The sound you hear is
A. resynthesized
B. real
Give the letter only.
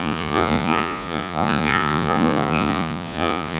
A